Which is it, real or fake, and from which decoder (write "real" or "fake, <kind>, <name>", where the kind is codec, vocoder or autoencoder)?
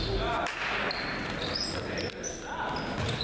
real